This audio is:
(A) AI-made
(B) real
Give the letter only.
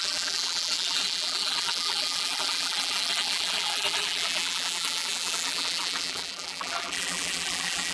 A